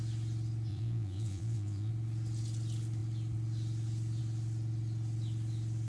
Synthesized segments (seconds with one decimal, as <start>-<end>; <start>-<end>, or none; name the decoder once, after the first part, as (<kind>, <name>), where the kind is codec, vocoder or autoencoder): 0.7-1.9 (vocoder, Vocos)